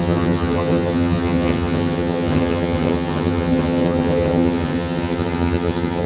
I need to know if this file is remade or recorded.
remade